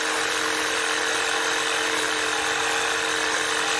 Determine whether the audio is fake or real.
real